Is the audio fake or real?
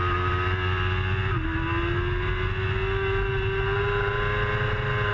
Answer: real